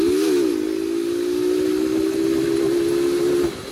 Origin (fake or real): real